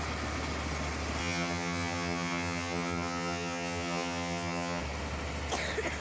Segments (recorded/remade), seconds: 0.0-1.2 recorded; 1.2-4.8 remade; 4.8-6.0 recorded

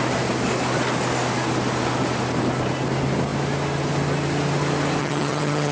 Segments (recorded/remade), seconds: 0.0-5.0 recorded; 5.0-5.7 remade

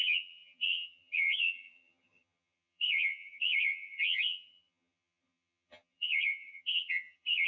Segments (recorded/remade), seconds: 0.0-7.5 remade